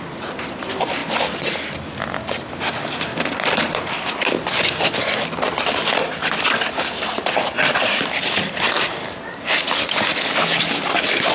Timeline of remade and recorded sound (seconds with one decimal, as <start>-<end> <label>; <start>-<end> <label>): 0.0-10.1 recorded; 10.1-10.6 remade; 10.6-11.3 recorded